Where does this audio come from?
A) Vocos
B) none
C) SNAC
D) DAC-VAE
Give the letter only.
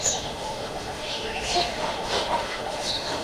D